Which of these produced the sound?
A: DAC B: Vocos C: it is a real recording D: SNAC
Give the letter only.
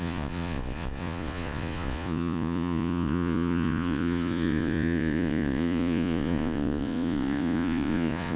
B